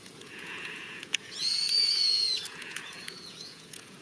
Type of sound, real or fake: fake